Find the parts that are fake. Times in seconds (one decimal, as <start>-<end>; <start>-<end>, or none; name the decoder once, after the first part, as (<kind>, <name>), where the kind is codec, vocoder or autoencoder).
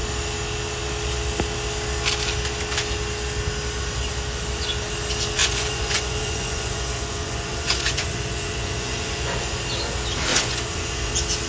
5.4-9.6 (vocoder, Vocos); 10.3-11.1